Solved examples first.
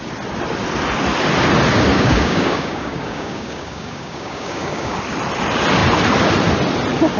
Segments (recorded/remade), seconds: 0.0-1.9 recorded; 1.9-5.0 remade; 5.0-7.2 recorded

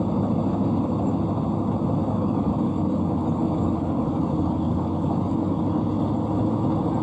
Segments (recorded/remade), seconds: 0.0-2.0 recorded; 2.0-5.8 remade; 5.8-7.0 recorded

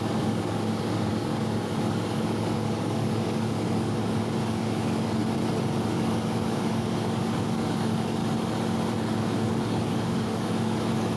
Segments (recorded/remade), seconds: 0.0-5.2 remade; 5.2-5.9 recorded; 5.9-8.2 remade; 8.2-9.2 recorded; 9.2-11.2 remade